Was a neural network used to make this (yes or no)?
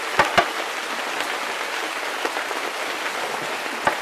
no